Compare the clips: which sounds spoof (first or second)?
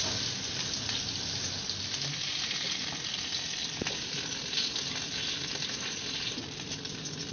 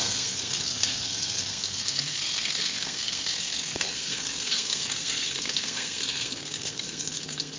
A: second